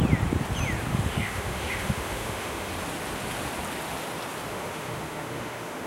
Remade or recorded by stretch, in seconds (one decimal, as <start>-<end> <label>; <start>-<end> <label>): 0.0-0.9 recorded; 0.9-2.7 remade; 2.7-4.5 recorded; 4.5-5.9 remade